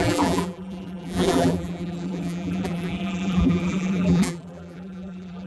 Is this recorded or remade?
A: remade